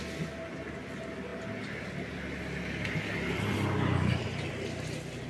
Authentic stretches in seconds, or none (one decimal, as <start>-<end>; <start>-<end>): 0.0-5.3